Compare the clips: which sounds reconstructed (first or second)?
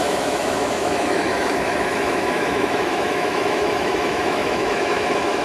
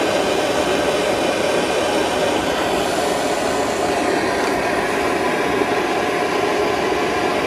first